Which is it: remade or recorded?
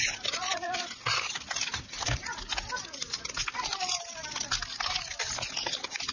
recorded